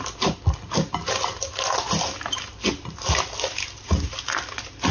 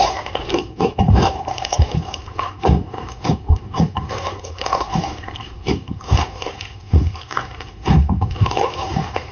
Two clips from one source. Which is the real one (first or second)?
first